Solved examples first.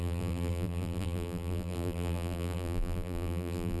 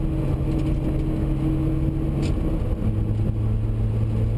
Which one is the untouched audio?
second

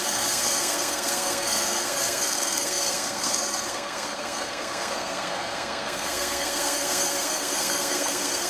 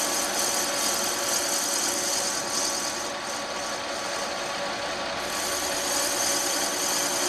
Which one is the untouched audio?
second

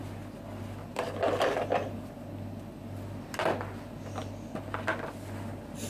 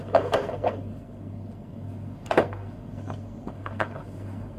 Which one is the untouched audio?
first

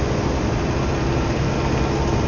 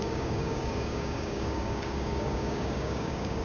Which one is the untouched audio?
first